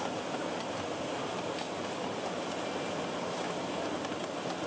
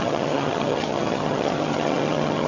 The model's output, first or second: second